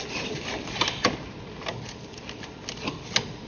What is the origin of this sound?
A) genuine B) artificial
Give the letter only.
A